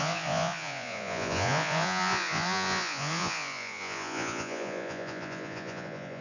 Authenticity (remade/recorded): remade